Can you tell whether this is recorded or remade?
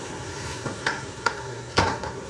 remade